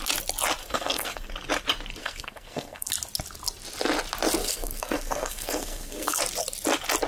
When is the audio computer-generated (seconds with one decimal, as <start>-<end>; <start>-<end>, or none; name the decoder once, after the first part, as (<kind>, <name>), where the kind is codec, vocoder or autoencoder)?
0.6-1.3 (codec, SNAC); 2.0-2.9; 4.4-6.2

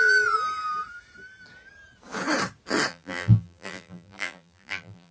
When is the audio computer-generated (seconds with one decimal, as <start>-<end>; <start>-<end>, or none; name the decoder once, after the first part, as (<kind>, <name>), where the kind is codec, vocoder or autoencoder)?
2.9-5.1 (vocoder, BigVGAN v2)

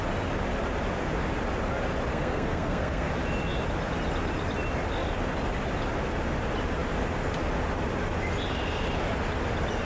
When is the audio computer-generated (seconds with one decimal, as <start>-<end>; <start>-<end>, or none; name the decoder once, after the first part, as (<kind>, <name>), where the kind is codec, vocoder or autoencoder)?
2.1-3.1 (codec, SNAC)

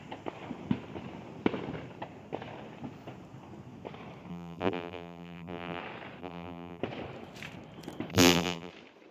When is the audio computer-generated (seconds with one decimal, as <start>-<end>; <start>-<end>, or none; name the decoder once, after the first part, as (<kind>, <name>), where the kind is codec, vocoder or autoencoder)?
4.3-5.8 (vocoder, BigVGAN v2); 6.2-6.8; 8.1-8.7

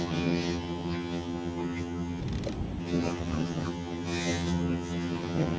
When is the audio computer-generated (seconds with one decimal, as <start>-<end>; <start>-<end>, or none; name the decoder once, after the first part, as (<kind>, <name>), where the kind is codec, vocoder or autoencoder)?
0.0-2.2 (vocoder, HiFi-GAN); 2.8-5.6

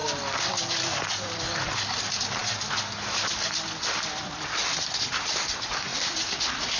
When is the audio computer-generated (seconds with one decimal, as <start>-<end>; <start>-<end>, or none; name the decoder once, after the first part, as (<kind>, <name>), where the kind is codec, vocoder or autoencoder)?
1.1-2.4 (vocoder, BigVGAN v2); 3.1-4.6; 5.2-5.9